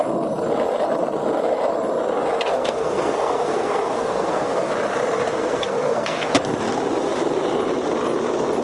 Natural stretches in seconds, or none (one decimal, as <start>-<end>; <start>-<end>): 0.0-2.5; 4.7-5.4; 6.3-8.6